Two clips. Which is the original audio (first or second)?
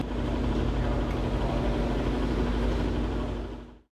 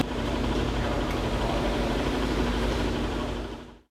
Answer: first